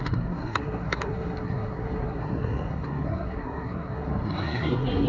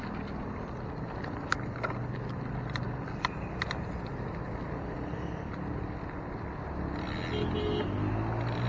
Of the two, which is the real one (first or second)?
second